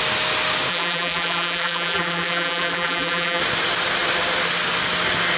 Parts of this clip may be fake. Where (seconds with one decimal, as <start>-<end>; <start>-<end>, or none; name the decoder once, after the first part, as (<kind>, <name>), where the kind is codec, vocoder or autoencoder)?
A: 0.7-3.4 (vocoder, BigVGAN v2)